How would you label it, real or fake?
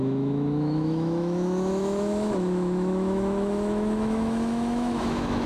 fake